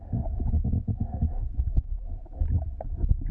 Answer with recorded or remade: recorded